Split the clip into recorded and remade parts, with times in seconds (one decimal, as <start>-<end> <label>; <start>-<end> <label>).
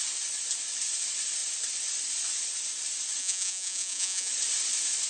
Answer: 0.0-3.2 recorded; 3.2-4.3 remade; 4.3-5.1 recorded